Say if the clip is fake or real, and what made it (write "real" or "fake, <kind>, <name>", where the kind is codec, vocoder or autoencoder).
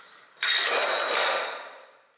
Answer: real